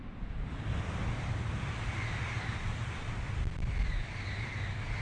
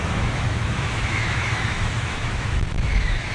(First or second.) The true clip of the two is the first